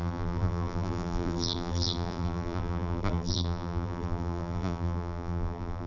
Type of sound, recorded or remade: remade